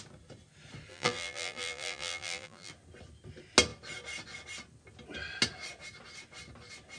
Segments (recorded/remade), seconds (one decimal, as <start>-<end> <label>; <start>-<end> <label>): 0.0-0.9 recorded; 0.9-2.7 remade; 2.7-7.0 recorded